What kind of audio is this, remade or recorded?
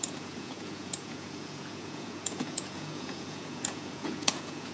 remade